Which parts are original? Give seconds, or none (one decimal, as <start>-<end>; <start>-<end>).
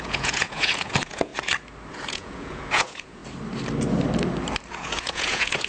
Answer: 1.3-1.9; 3.2-4.7